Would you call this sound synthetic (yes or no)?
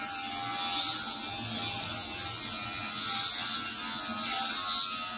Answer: no